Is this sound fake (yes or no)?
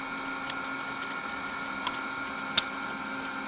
no